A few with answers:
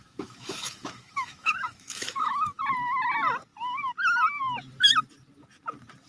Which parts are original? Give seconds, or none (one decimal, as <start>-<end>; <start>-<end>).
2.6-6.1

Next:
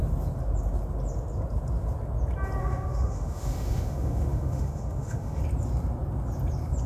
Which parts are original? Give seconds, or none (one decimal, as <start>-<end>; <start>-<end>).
0.0-2.6; 5.4-6.9

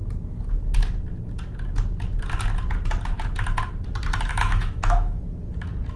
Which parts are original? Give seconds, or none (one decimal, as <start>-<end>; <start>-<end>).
0.0-4.3; 5.2-6.0

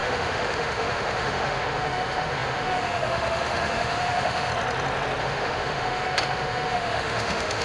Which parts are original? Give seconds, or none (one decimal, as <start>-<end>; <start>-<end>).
4.5-5.2

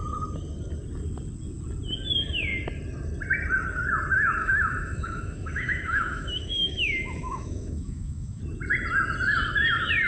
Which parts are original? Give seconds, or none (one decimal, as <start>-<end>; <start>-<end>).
0.0-4.4; 8.4-10.1

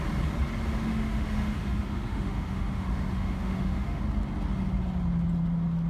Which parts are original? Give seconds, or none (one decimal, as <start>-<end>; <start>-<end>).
0.0-0.9; 4.0-5.9